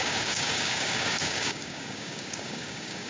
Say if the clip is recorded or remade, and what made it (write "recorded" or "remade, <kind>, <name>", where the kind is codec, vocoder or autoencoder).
remade, codec, DAC